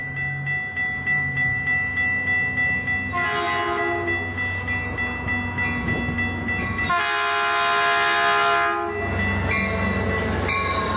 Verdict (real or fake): real